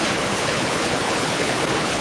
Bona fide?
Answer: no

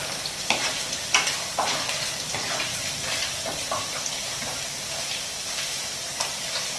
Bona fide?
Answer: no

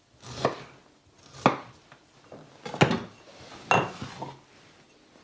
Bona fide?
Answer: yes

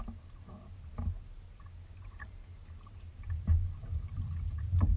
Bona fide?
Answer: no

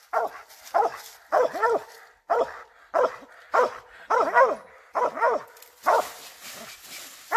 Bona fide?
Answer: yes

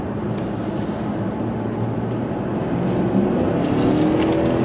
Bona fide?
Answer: yes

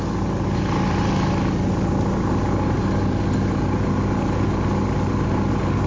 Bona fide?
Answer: yes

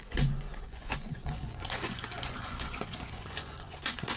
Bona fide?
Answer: no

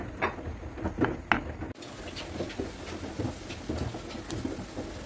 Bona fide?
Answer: yes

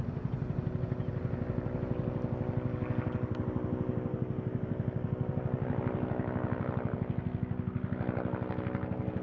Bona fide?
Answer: yes